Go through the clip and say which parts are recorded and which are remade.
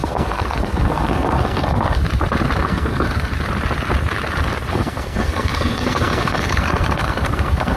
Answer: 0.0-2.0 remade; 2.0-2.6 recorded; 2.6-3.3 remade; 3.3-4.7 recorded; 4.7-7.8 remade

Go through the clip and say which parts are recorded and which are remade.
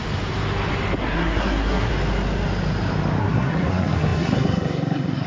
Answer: 0.0-1.0 recorded; 1.0-1.9 remade; 1.9-3.2 recorded; 3.2-5.3 remade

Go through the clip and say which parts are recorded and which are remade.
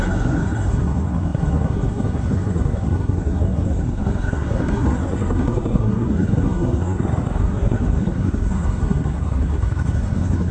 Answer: 0.0-10.5 remade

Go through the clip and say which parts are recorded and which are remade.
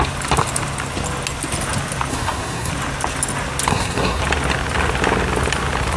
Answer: 0.0-2.1 recorded; 2.1-2.7 remade; 2.7-3.7 recorded; 3.7-4.2 remade; 4.2-6.0 recorded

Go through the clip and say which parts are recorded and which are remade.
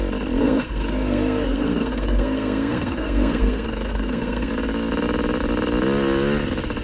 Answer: 0.0-0.4 recorded; 0.4-4.5 remade; 4.5-6.8 recorded